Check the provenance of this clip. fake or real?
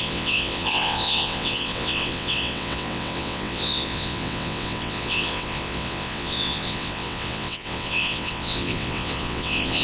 fake